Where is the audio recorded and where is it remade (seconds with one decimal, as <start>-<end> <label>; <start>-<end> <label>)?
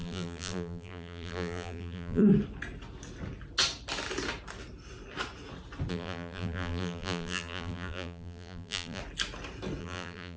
0.0-2.2 remade; 2.2-5.9 recorded; 5.9-9.0 remade; 9.0-9.8 recorded; 9.8-10.4 remade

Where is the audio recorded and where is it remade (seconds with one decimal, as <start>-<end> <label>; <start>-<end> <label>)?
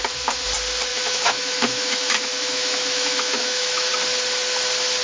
0.0-0.9 recorded; 0.9-3.9 remade; 3.9-5.0 recorded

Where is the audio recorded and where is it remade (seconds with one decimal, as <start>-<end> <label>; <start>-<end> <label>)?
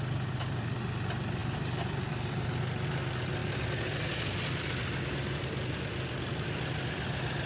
0.0-1.4 recorded; 1.4-2.6 remade; 2.6-7.5 recorded